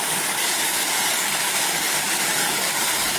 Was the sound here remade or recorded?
remade